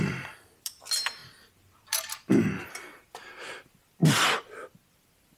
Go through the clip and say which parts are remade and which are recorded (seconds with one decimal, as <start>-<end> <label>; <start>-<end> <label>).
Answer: 0.0-1.2 remade; 1.2-3.5 recorded; 3.5-4.0 remade; 4.0-4.9 recorded; 4.9-5.4 remade